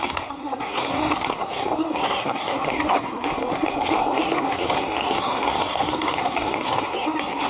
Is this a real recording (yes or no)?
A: no